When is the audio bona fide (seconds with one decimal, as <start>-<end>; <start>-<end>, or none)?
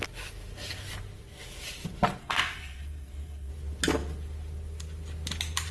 0.0-2.2; 3.5-5.7